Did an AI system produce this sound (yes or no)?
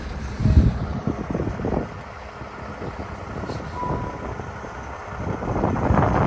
no